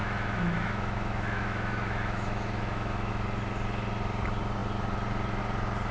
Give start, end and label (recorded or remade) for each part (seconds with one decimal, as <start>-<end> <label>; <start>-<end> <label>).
0.0-3.1 remade; 3.1-5.9 recorded